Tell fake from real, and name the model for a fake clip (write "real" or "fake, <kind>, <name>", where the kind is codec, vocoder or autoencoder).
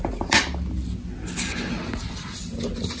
real